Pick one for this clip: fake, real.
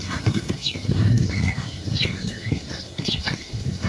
fake